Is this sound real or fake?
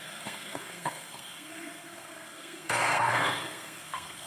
fake